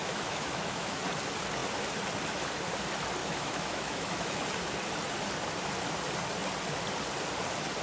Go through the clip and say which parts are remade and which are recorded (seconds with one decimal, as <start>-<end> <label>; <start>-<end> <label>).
0.0-1.0 remade; 1.0-3.2 recorded; 3.2-4.4 remade; 4.4-7.8 recorded